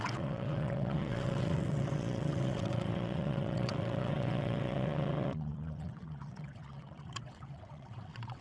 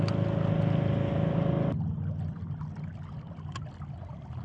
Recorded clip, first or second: second